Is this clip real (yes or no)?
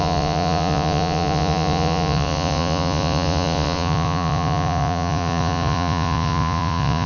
no